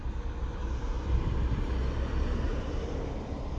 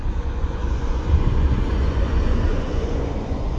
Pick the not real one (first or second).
second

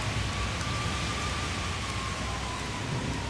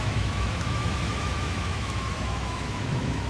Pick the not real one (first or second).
second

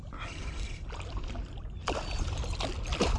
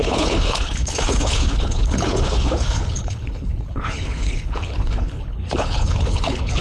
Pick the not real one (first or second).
second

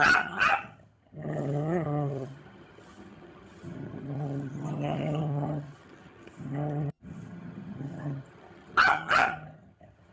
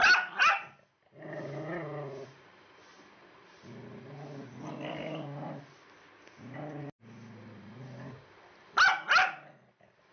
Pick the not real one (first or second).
first